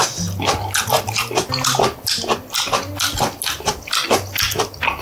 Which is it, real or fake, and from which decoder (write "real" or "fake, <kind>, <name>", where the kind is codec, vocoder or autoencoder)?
real